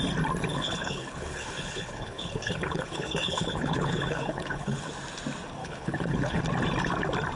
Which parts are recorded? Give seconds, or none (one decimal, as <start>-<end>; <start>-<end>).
0.0-0.5; 4.9-5.6; 6.4-7.4